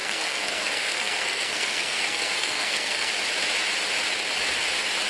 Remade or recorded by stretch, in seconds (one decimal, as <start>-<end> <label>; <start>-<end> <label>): 0.0-3.1 remade; 3.1-5.1 recorded